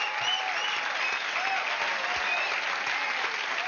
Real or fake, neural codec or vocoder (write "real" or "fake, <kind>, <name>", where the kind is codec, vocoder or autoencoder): real